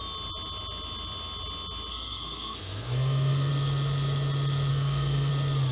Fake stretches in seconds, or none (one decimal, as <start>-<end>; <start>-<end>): 1.9-3.5; 4.7-5.3